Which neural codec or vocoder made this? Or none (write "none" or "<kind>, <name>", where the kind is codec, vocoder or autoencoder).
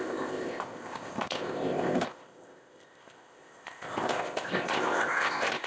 codec, ZipCodec